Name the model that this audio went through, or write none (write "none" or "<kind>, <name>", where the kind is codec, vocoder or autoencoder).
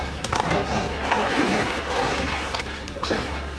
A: codec, SNAC